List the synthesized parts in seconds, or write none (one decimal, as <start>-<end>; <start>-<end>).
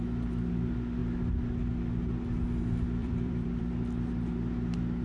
3.0-3.6